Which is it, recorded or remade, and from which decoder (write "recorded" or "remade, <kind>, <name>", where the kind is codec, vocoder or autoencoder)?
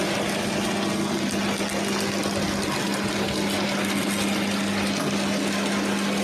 recorded